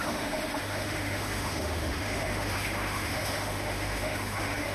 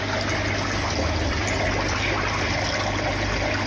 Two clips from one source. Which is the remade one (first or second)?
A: first